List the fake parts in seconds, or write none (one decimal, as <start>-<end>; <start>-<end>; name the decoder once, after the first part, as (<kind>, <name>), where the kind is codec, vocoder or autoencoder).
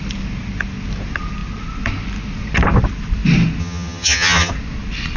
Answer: 3.6-4.5 (vocoder, HiFi-GAN)